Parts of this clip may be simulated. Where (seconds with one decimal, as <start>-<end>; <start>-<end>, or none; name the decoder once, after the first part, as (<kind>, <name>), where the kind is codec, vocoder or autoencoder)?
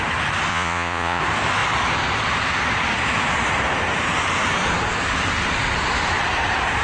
0.5-1.2 (vocoder, Vocos)